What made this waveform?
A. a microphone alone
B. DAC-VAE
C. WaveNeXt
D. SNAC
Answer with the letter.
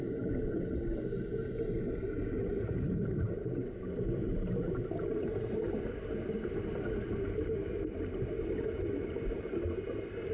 A